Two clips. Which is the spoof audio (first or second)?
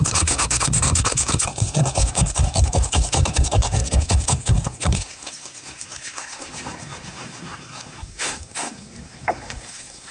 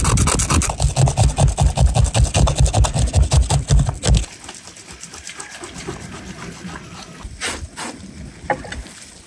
first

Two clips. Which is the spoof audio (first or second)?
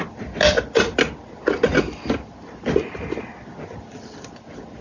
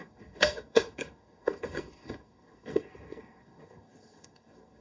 second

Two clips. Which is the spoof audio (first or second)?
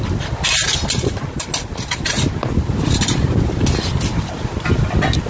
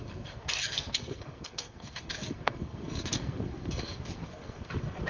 second